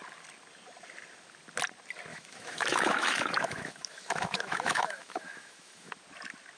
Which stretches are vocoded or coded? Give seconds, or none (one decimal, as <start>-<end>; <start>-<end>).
2.1-5.9

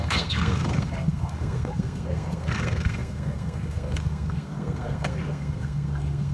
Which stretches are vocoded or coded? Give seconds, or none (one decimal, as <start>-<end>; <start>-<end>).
0.0-6.3

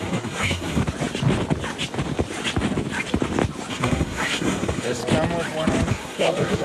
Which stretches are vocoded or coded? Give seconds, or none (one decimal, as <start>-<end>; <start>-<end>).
0.0-0.8; 3.7-5.0; 5.9-6.6

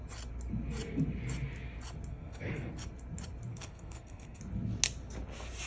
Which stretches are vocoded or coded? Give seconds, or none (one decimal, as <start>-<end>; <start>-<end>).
2.1-2.7; 3.5-4.4

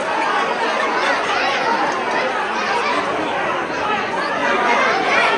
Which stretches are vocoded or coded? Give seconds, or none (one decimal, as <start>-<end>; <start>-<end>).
0.8-1.7; 3.9-5.4